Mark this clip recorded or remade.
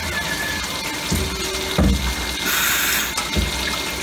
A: recorded